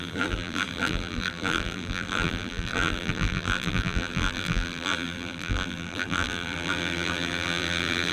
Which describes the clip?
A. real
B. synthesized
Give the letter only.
B